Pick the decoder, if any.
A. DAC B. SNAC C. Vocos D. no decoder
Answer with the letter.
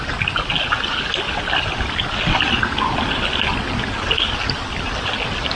D